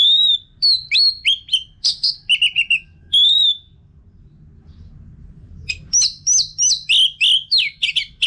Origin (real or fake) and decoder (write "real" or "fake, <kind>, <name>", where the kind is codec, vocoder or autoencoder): real